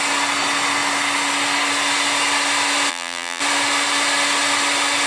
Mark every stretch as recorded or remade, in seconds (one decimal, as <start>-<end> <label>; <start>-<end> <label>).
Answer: 0.0-2.9 recorded; 2.9-3.4 remade; 3.4-5.1 recorded